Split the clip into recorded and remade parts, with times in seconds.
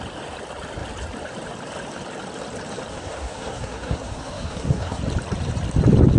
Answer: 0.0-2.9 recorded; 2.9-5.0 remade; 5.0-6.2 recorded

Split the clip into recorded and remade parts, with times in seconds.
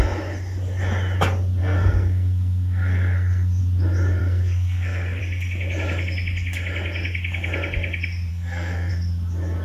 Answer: 0.0-1.6 recorded; 1.6-3.6 remade; 3.6-4.2 recorded; 4.2-5.2 remade; 5.2-8.3 recorded; 8.3-8.9 remade; 8.9-9.6 recorded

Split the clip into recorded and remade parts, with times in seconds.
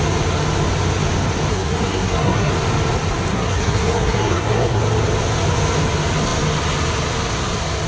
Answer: 0.0-1.5 recorded; 1.5-2.5 remade; 2.5-3.3 recorded; 3.3-4.8 remade; 4.8-7.9 recorded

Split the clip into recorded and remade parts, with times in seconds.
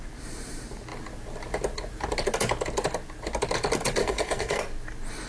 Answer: 0.0-4.0 recorded; 4.0-4.6 remade; 4.6-5.3 recorded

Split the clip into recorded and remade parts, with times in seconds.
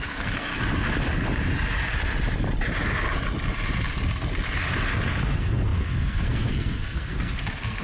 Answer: 0.0-0.5 remade; 0.5-5.2 recorded; 5.2-7.8 remade